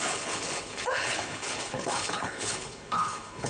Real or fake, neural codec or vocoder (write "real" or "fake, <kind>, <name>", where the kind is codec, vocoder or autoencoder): fake, codec, HILCodec